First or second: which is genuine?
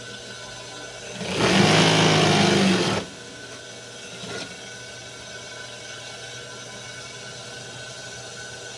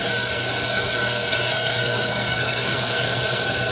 first